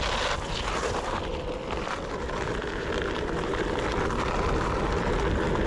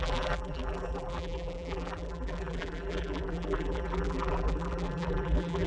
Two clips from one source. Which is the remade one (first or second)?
second